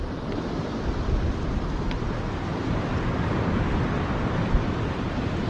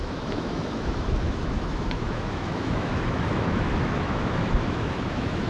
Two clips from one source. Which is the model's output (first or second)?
second